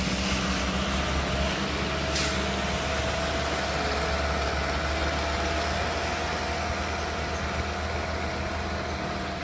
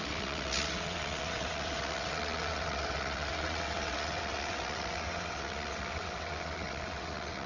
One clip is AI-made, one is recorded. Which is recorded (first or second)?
first